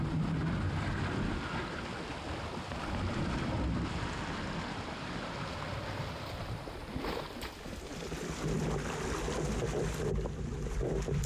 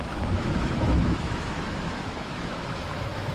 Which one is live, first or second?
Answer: first